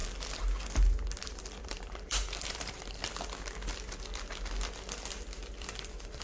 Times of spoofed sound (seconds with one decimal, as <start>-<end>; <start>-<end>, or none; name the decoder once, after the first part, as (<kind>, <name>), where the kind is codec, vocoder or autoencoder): 1.6-3.0 (vocoder, BigVGAN v2); 5.5-6.2